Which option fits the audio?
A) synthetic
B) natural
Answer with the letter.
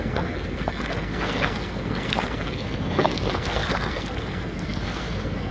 A